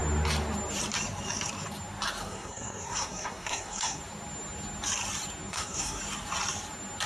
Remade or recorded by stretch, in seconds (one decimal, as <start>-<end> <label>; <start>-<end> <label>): 0.0-2.2 recorded; 2.2-4.0 remade; 4.0-5.5 recorded; 5.5-6.0 remade; 6.0-7.1 recorded